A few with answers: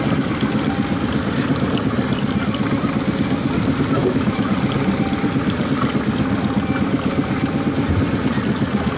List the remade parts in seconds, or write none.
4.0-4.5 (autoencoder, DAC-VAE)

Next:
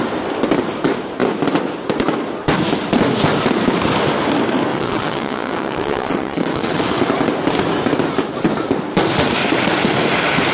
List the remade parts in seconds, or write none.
4.7-6.8 (vocoder, WaveNeXt)

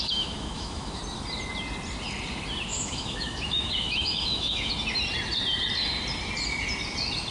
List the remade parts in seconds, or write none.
0.0-1.0 (autoencoder, DAC-VAE); 2.7-4.7

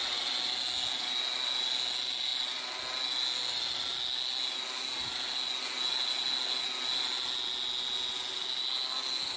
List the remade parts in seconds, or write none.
none

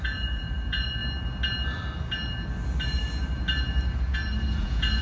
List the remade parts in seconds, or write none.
0.0-1.0 (vocoder, Vocos); 4.0-5.0

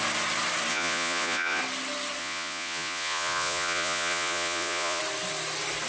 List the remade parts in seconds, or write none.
0.7-1.6 (vocoder, Vocos); 2.2-5.0